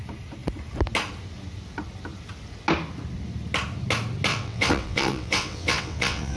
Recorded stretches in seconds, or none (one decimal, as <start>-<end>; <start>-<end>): 0.0-4.3